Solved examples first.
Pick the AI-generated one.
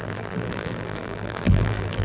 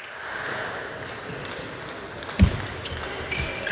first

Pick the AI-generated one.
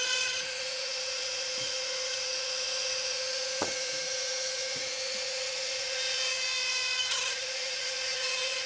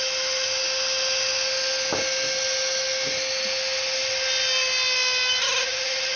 first